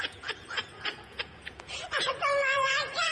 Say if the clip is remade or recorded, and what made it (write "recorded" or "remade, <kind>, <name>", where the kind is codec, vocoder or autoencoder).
remade, vocoder, Vocos